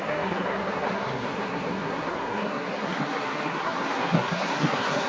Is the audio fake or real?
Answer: fake